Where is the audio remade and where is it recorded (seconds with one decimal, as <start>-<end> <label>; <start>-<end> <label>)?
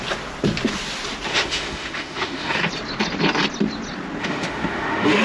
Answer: 0.0-1.3 recorded; 1.3-2.7 remade; 2.7-4.2 recorded; 4.2-5.2 remade